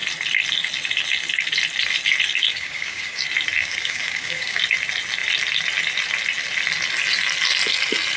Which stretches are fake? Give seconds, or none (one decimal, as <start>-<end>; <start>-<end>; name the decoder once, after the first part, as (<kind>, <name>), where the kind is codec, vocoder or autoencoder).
2.5-3.2 (codec, DAC); 3.6-4.6